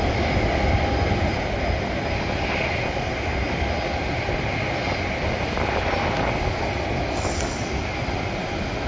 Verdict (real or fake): real